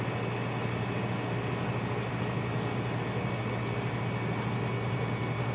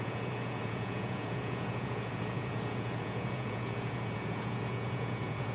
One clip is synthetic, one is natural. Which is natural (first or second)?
first